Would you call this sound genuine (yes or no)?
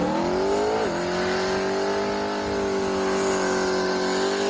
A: yes